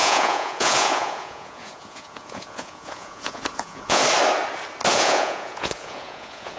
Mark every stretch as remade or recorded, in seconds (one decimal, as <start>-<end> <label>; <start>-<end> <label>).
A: 0.0-4.0 remade; 4.0-4.9 recorded; 4.9-6.6 remade